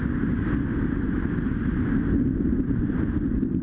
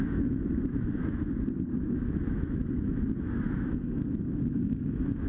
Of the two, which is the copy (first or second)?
second